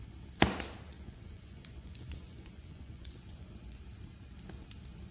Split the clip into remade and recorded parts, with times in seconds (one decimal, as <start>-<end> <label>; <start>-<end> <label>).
0.0-0.9 recorded; 0.9-3.8 remade; 3.8-5.1 recorded